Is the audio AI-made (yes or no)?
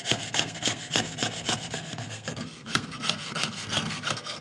yes